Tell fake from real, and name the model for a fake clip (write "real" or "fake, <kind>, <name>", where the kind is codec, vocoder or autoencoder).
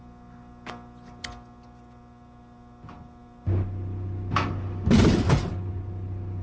real